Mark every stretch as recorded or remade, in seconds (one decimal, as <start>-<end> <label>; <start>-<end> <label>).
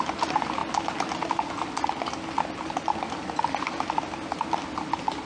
0.0-5.3 recorded